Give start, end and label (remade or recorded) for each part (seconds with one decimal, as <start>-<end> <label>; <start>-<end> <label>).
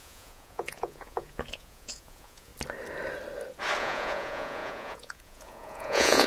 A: 0.0-2.5 remade; 2.5-3.8 recorded; 3.8-6.3 remade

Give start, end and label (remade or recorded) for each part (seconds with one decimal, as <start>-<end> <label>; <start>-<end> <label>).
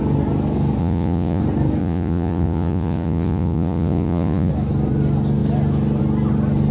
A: 0.0-0.8 recorded; 0.8-1.4 remade; 1.4-1.8 recorded; 1.8-4.5 remade; 4.5-6.7 recorded